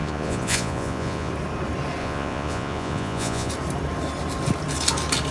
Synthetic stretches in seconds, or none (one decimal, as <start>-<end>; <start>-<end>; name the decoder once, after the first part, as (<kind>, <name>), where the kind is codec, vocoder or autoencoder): 0.0-1.3 (vocoder, Vocos); 2.0-3.5